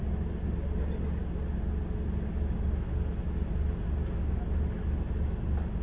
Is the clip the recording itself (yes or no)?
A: yes